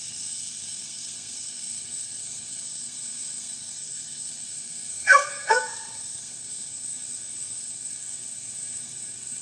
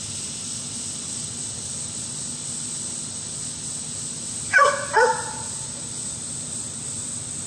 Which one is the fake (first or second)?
first